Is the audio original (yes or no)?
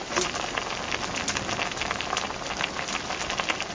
yes